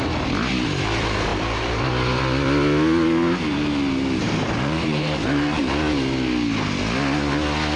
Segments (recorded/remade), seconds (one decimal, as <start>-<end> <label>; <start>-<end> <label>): 0.0-1.3 recorded; 1.3-2.2 remade; 2.2-4.2 recorded; 4.2-5.6 remade; 5.6-7.8 recorded